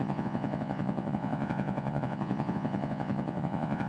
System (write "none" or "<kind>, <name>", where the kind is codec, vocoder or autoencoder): vocoder, Vocos